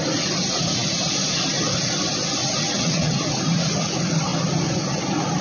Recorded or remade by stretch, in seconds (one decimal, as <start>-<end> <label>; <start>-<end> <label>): 0.0-2.4 recorded; 2.4-3.4 remade; 3.4-5.4 recorded